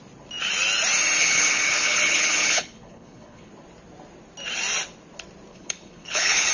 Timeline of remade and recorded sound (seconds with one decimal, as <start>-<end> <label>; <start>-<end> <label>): 0.0-1.2 recorded; 1.2-3.5 remade; 3.5-5.5 recorded; 5.5-6.5 remade